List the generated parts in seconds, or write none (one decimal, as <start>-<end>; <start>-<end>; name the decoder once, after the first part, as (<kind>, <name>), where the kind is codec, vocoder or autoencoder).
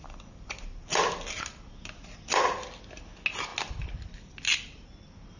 none